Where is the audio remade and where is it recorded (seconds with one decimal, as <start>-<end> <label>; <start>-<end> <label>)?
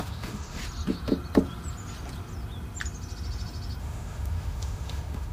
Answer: 0.0-0.6 remade; 0.6-3.8 recorded; 3.8-5.3 remade